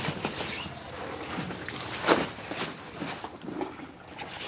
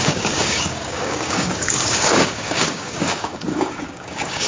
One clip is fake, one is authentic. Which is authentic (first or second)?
first